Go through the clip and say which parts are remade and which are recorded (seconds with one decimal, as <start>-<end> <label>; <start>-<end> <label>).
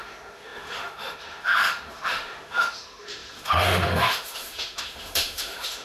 0.0-5.8 remade